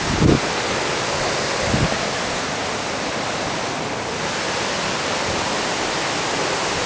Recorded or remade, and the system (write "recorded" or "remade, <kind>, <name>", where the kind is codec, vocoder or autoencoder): recorded